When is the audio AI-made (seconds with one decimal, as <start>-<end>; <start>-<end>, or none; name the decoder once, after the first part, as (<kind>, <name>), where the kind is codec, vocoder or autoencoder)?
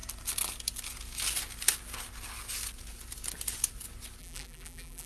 4.2-5.1 (vocoder, BigVGAN v2)